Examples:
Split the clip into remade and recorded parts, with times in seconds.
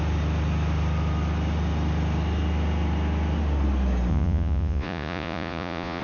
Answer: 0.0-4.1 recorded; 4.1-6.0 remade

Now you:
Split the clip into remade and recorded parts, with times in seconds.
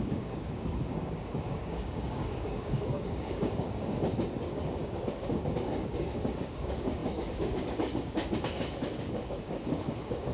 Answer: 0.0-10.3 remade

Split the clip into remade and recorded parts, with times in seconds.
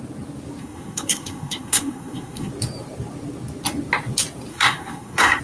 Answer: 0.0-0.6 recorded; 0.6-2.5 remade; 2.5-4.5 recorded; 4.5-5.4 remade